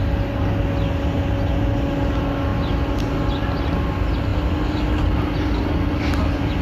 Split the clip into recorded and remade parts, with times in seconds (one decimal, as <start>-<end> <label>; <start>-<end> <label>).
0.0-6.6 recorded